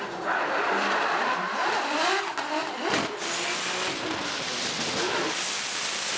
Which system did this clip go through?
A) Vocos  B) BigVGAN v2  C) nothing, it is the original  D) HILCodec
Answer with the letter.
C